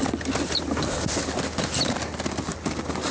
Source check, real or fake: real